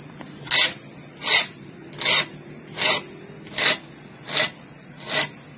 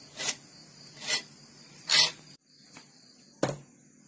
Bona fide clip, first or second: first